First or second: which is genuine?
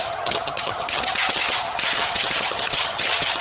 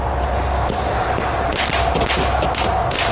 second